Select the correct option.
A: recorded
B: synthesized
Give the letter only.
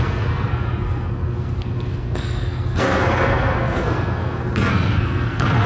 B